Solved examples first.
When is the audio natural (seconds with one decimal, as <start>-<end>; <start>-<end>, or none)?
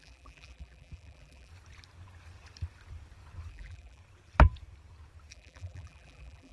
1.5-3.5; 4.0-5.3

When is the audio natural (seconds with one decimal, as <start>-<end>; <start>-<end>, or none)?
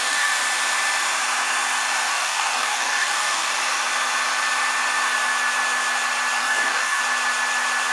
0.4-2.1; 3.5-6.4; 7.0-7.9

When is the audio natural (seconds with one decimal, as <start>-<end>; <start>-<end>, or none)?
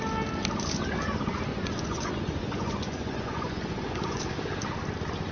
0.0-1.5; 4.2-5.3